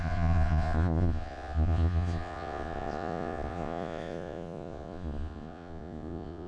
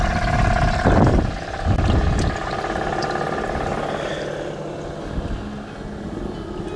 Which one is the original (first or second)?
second